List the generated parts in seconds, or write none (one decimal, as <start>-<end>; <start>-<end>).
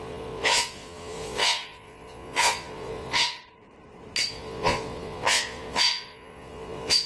0.0-3.4; 4.3-7.1